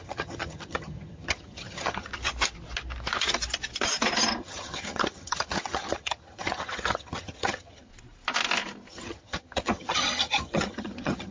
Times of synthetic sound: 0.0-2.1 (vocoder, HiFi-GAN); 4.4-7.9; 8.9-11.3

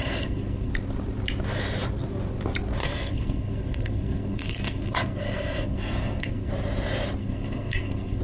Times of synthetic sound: 0.0-0.7 (codec, SNAC); 2.8-6.5; 7.2-8.2

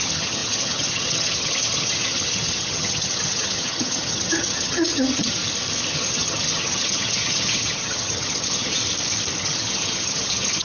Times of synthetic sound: 0.0-5.4 (vocoder, HiFi-GAN); 5.9-8.8; 9.4-10.6

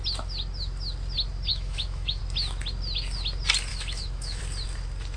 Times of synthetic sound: 1.5-2.2 (autoencoder, DAC-VAE); 3.7-4.4

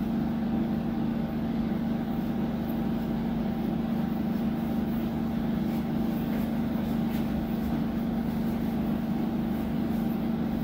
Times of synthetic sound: 1.1-1.7 (codec, DAC)

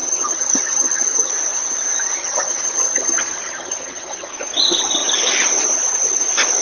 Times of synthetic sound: 0.0-1.3 (vocoder, HiFi-GAN); 2.2-4.3